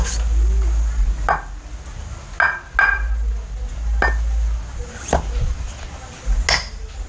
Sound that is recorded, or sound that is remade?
recorded